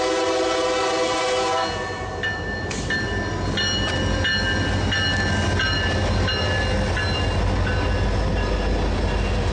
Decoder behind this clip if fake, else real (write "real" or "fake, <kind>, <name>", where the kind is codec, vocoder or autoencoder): real